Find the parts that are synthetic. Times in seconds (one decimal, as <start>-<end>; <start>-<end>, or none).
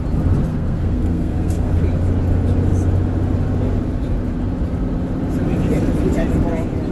0.5-1.8